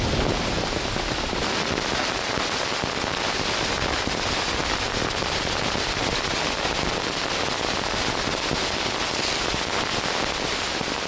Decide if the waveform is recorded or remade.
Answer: recorded